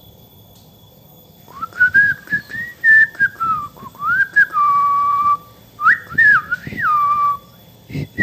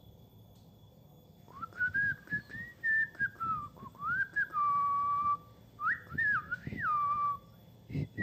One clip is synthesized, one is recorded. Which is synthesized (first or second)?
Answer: first